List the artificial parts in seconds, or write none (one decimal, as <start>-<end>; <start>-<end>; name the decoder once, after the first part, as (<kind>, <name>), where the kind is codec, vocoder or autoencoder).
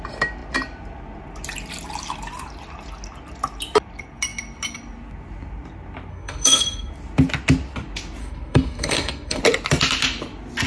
6.1-6.9 (codec, SNAC); 8.2-9.4